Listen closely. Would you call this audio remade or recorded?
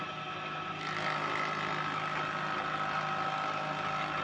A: recorded